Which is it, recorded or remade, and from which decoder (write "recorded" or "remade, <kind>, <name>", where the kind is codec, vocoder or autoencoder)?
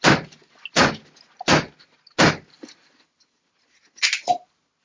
recorded